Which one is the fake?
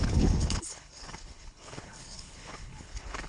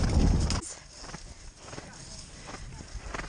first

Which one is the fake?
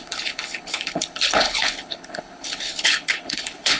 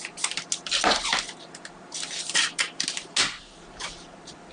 first